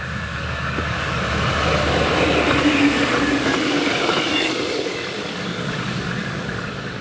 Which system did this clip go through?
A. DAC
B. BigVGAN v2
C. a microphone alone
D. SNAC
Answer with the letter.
A